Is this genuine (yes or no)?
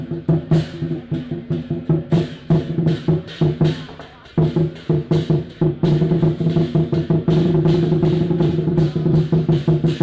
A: no